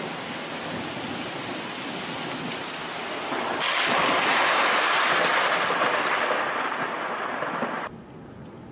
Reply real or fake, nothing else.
real